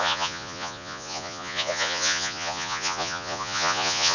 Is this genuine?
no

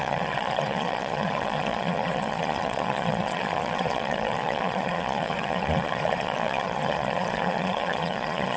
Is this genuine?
no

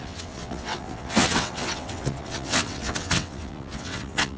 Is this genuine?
no